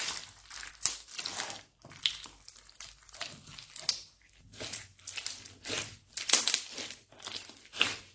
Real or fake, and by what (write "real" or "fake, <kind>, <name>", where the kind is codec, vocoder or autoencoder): real